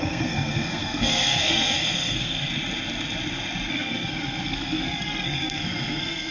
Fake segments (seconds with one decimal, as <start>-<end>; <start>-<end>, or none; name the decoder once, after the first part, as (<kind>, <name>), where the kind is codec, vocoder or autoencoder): 0.0-2.5 (codec, SNAC); 3.7-6.3